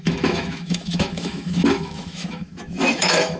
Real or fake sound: fake